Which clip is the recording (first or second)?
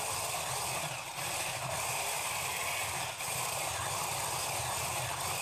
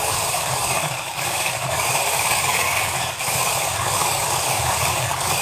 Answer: first